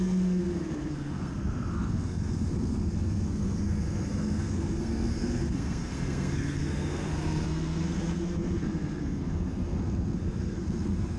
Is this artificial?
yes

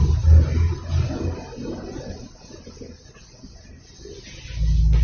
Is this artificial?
no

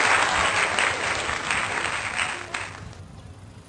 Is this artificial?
no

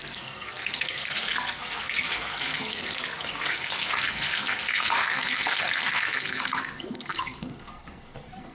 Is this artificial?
yes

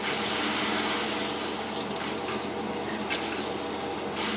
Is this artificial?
no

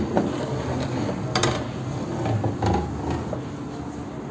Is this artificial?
no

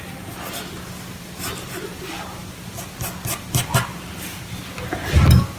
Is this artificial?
no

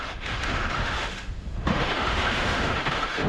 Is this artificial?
yes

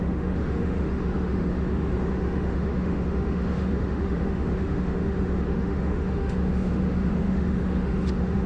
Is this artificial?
yes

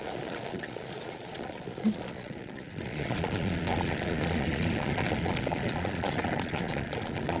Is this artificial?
yes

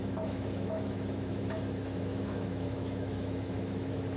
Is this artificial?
yes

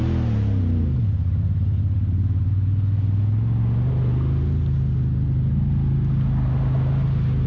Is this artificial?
no